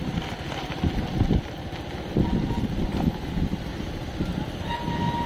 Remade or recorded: recorded